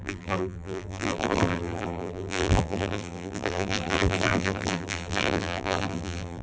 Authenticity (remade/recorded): remade